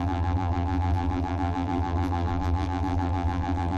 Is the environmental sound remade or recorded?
remade